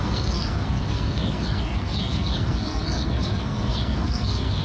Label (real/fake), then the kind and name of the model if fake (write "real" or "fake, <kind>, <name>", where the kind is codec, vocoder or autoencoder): fake, codec, SNAC